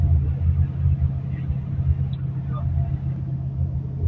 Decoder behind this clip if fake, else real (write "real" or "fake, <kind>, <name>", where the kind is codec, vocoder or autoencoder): real